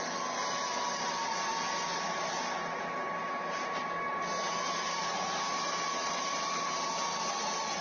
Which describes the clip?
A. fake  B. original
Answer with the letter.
B